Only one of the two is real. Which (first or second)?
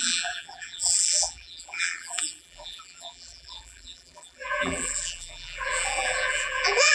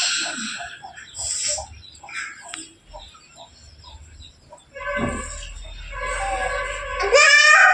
second